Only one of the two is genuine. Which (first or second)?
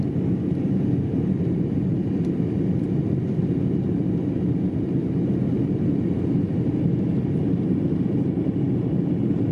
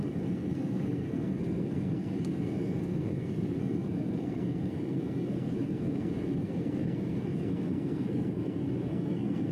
first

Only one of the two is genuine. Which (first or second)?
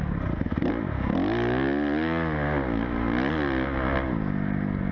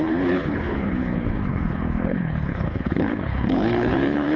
first